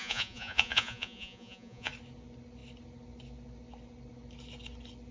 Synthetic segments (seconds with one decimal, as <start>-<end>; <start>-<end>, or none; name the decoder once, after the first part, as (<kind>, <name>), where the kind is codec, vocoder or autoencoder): 0.0-1.9 (vocoder, Vocos)